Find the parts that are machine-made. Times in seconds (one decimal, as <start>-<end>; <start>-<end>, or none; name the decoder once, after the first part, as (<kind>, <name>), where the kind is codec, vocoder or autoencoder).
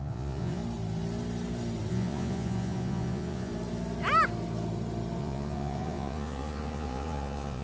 0.0-0.6 (vocoder, Vocos); 1.9-3.5; 5.2-7.6